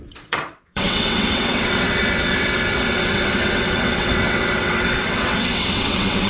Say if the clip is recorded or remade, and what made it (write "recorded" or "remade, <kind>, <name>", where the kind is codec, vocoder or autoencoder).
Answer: remade, vocoder, WaveNeXt